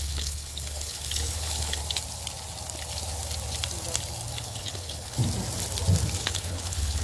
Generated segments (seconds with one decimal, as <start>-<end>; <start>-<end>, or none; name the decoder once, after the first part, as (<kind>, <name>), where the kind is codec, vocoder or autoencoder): 0.0-1.8 (codec, HILCodec); 4.3-5.2; 6.2-7.0